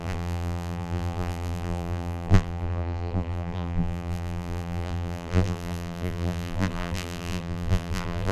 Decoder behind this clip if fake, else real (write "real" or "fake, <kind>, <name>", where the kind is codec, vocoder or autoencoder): fake, vocoder, BigVGAN v2